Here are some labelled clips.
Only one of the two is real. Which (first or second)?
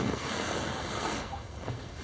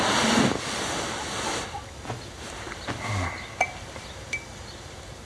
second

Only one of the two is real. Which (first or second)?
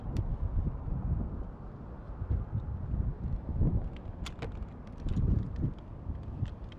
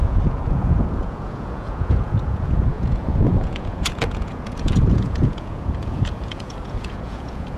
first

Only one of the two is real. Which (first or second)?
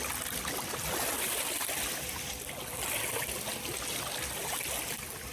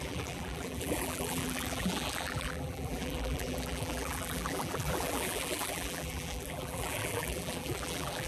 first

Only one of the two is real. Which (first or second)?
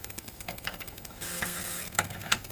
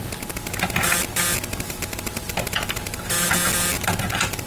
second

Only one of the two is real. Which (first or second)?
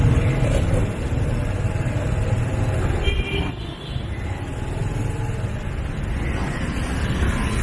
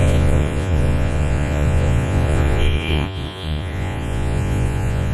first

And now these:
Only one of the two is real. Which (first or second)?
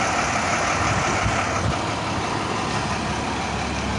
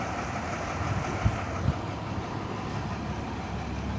first